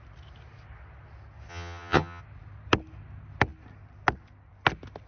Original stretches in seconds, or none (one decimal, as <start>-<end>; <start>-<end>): 0.0-1.5; 2.2-5.1